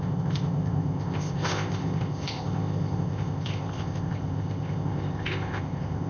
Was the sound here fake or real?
fake